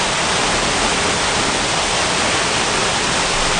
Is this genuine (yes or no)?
yes